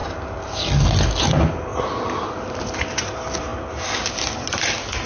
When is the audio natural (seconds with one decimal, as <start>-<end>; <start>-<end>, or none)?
0.0-5.1